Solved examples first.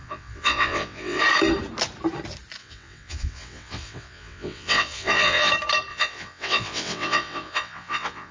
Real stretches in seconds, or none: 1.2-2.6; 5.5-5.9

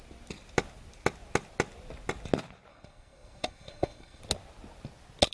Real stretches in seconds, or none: 0.0-2.7; 4.2-5.3

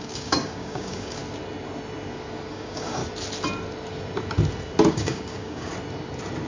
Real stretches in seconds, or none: 1.2-2.5; 3.0-4.9; 5.7-6.5

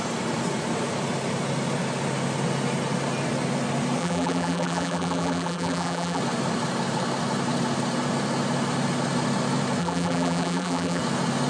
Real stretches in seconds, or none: 0.0-4.0; 6.2-9.8; 11.0-11.5

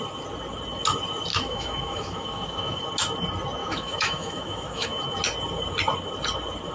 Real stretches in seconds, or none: 0.0-1.3; 2.8-3.6; 5.0-6.7

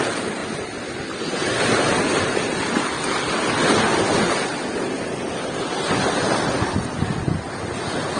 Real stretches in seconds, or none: 0.0-8.2

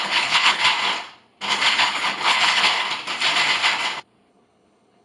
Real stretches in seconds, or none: 0.6-1.7; 2.7-4.3

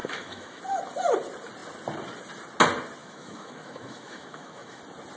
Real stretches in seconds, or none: 0.6-3.0; 4.8-5.2